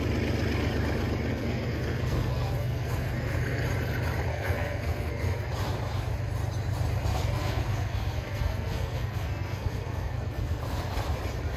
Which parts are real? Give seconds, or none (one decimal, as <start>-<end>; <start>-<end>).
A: 0.0-1.3; 3.6-4.3; 5.5-7.1; 11.0-11.6